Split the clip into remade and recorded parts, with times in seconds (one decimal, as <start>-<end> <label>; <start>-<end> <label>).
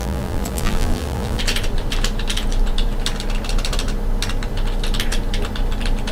0.0-1.4 remade; 1.4-6.1 recorded